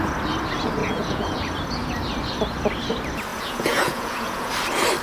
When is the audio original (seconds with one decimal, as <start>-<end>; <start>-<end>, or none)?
0.0-0.8; 1.4-3.3; 4.5-5.0